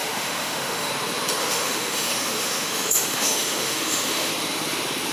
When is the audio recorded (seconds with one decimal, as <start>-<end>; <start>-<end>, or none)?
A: 0.9-1.4; 4.3-5.1